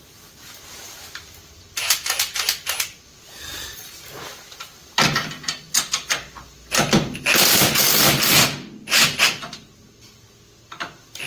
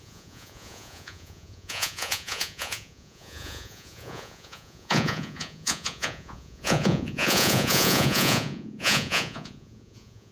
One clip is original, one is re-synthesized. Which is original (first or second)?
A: first